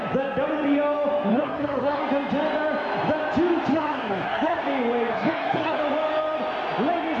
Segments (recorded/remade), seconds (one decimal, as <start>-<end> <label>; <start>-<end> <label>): 0.0-1.3 recorded; 1.3-2.0 remade; 2.0-3.7 recorded; 3.7-4.6 remade; 4.6-5.1 recorded; 5.1-5.8 remade; 5.8-7.2 recorded